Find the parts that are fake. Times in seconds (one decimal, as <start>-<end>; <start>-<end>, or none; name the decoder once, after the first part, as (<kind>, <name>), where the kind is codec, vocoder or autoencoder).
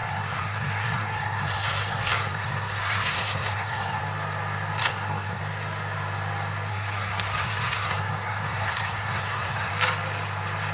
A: 0.0-4.0 (codec, SNAC); 4.8-5.4; 6.7-9.7